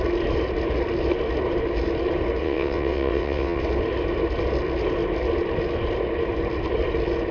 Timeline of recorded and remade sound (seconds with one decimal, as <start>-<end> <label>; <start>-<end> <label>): 0.0-2.4 recorded; 2.4-3.6 remade; 3.6-7.3 recorded